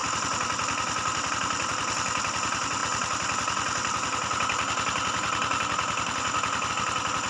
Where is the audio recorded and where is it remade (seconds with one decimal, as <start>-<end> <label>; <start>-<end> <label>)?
0.0-7.3 recorded